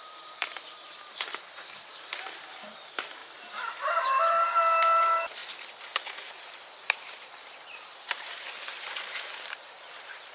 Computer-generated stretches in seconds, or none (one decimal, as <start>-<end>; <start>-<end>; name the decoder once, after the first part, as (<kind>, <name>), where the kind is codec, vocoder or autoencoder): 0.0-5.4 (vocoder, BigVGAN v2); 6.8-10.3